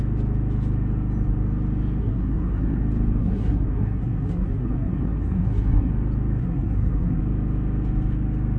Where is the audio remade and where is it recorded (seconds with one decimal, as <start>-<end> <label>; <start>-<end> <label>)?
0.0-2.0 recorded; 2.0-2.8 remade; 2.8-3.2 recorded; 3.2-5.9 remade; 5.9-6.4 recorded; 6.4-7.2 remade; 7.2-8.6 recorded